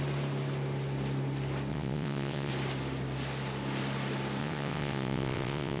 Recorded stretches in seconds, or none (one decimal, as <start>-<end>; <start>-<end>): 0.0-1.7; 2.5-4.4